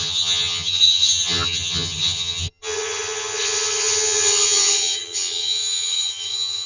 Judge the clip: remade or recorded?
remade